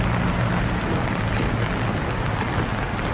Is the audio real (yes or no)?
yes